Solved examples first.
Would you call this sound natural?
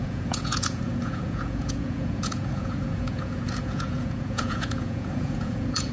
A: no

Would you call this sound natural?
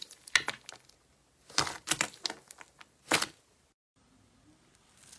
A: yes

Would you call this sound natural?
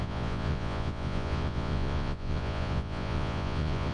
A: no